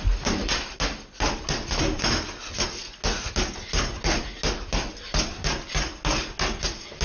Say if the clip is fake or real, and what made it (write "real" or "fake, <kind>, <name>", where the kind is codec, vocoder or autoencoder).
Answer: real